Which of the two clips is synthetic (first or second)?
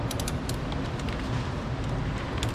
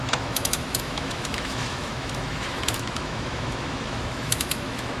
second